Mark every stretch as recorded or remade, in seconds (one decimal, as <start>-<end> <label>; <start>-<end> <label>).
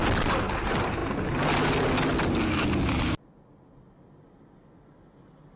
0.0-5.6 recorded